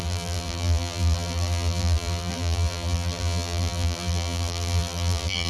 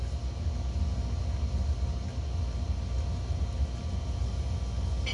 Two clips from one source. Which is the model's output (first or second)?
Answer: first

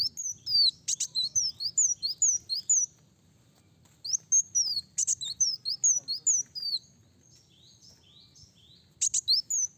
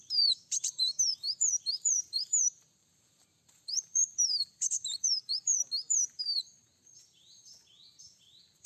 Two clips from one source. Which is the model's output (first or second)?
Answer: second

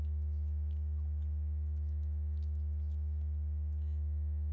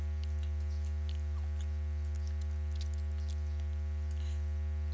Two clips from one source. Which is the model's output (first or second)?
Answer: first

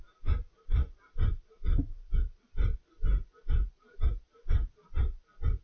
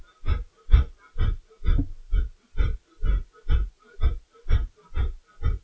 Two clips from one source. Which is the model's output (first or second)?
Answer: first